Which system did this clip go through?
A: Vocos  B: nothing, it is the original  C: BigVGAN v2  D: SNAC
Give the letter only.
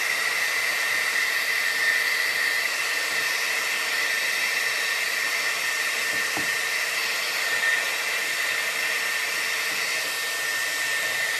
B